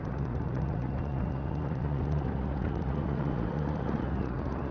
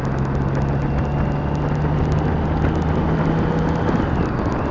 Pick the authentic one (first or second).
second